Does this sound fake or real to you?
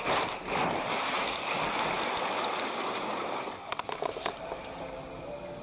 real